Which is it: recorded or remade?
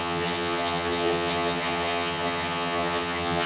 remade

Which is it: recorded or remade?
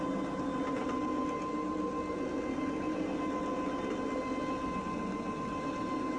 recorded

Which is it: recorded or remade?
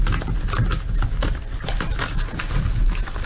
recorded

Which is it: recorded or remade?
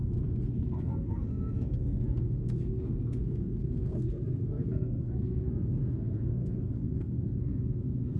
remade